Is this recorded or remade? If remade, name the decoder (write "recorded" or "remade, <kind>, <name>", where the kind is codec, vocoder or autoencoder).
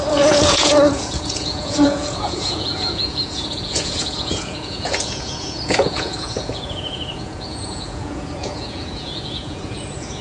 remade, vocoder, Vocos